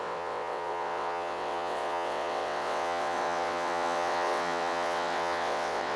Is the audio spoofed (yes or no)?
yes